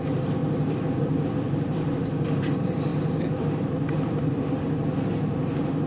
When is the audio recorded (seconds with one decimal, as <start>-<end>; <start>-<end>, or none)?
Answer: 0.0-0.4; 2.4-2.9; 4.6-5.9